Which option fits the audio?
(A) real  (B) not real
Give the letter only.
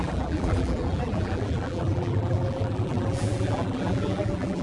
B